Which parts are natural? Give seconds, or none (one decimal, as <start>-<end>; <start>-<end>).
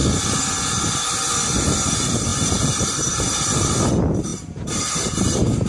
0.0-1.9